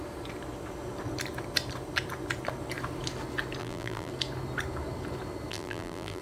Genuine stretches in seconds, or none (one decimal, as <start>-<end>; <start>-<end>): 0.0-3.6; 4.1-5.5